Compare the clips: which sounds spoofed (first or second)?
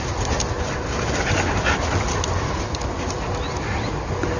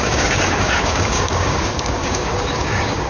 second